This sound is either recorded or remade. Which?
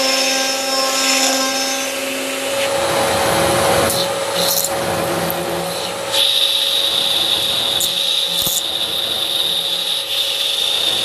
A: recorded